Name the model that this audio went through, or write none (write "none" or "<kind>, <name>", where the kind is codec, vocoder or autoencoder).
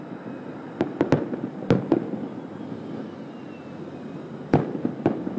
none